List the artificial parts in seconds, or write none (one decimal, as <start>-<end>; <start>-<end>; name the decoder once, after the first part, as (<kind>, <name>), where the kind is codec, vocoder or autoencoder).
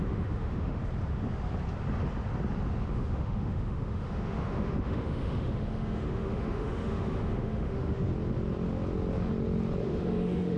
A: 0.0-0.8 (autoencoder, DAC-VAE); 2.9-8.1; 9.8-10.6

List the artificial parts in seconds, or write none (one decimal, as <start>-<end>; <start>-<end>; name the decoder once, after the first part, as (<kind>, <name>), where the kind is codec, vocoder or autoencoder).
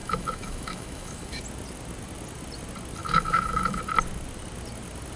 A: 0.0-1.4 (autoencoder, DAC-VAE); 3.0-3.8